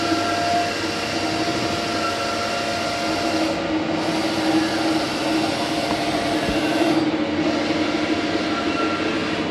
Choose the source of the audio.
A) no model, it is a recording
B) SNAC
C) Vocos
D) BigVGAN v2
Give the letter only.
A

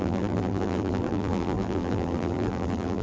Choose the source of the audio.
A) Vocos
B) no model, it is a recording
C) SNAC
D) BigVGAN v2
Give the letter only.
D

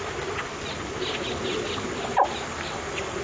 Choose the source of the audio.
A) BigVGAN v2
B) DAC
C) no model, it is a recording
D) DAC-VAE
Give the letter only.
C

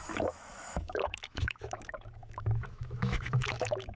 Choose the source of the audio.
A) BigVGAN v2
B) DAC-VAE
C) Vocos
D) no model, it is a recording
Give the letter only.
B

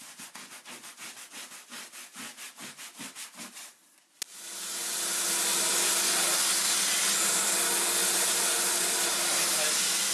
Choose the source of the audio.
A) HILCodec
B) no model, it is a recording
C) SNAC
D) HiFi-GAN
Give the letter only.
B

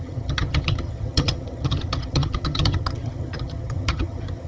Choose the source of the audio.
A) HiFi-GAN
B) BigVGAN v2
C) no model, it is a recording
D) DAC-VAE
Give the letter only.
A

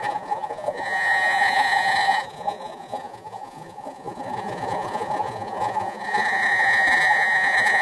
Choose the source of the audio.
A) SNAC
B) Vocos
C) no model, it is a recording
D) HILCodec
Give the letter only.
B